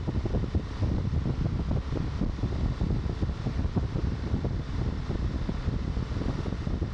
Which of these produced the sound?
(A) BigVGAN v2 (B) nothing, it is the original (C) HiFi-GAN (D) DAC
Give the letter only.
B